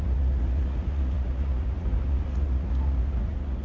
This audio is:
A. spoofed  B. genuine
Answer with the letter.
A